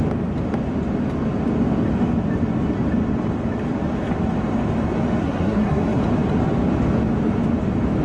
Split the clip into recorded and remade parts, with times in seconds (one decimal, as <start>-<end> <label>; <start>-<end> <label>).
0.0-5.2 recorded; 5.2-6.0 remade; 6.0-8.0 recorded